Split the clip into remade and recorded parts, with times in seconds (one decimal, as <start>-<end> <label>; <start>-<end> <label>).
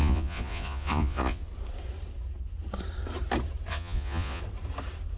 0.0-1.4 remade; 1.4-3.7 recorded; 3.7-4.4 remade; 4.4-5.2 recorded